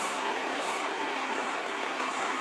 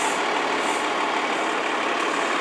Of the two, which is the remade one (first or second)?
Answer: first